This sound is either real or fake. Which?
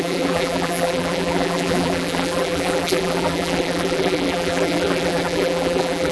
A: fake